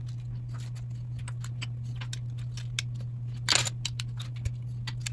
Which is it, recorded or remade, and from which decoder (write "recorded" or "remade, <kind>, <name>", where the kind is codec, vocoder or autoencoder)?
recorded